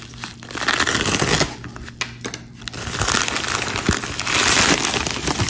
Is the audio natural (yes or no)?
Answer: yes